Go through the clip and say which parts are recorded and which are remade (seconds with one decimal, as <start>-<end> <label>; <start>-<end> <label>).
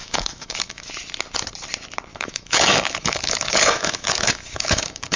0.0-0.9 remade; 0.9-2.1 recorded; 2.1-5.2 remade